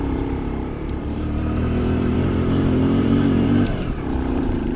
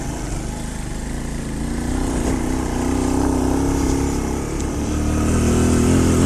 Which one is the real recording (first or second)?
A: second